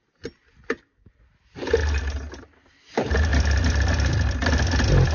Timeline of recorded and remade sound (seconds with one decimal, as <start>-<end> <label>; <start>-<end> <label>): 0.0-5.1 recorded